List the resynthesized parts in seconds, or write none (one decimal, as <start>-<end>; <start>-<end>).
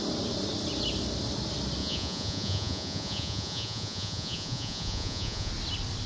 1.8-5.5